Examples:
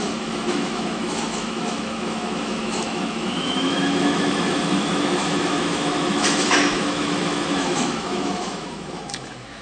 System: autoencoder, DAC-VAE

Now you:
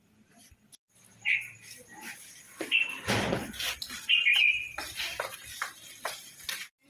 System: vocoder, BigVGAN v2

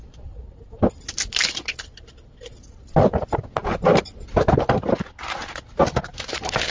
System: none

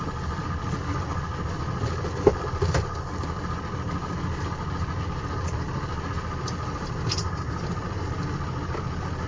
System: none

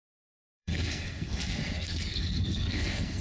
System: codec, SNAC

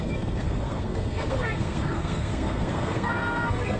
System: codec, SNAC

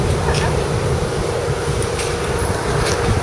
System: none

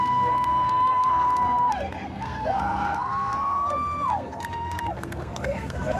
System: codec, SNAC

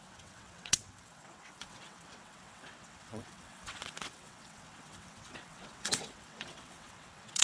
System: vocoder, WaveNeXt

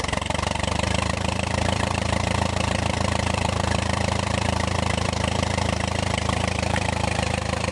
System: vocoder, BigVGAN v2